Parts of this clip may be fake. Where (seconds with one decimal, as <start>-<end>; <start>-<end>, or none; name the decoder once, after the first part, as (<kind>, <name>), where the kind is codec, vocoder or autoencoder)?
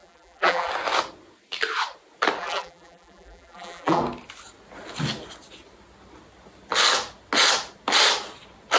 0.0-0.7 (vocoder, BigVGAN v2); 2.4-4.0